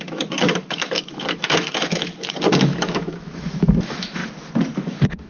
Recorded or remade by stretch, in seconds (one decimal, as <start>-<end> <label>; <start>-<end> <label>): 0.0-4.2 remade; 4.2-4.8 recorded; 4.8-5.3 remade